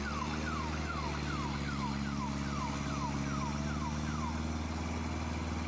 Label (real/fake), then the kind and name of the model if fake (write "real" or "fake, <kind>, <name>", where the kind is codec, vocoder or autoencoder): real